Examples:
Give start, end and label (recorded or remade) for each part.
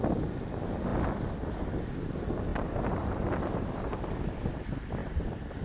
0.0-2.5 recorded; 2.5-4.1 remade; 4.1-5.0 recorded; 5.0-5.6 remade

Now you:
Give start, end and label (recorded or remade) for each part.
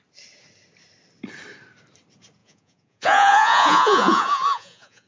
0.0-2.4 recorded; 2.4-5.1 remade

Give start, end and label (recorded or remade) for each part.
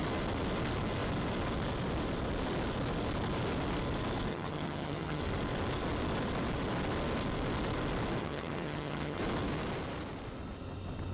0.0-4.3 recorded; 4.3-5.2 remade; 5.2-8.2 recorded; 8.2-9.2 remade; 9.2-11.1 recorded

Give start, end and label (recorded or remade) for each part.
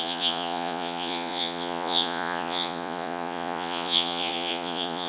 0.0-5.1 remade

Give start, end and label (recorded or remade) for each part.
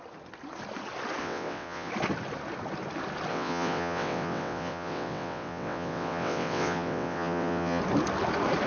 0.0-1.2 recorded; 1.2-1.9 remade; 1.9-3.3 recorded; 3.3-7.8 remade; 7.8-8.7 recorded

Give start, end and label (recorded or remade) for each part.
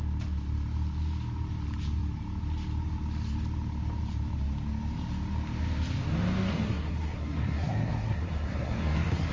0.0-6.5 recorded; 6.5-9.3 remade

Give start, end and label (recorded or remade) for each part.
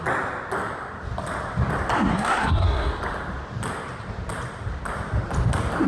0.0-2.1 recorded; 2.1-3.0 remade; 3.0-5.9 recorded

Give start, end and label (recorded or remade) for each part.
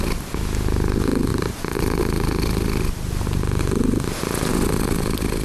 0.0-5.4 recorded